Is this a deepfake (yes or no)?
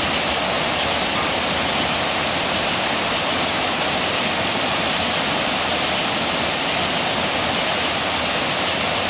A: no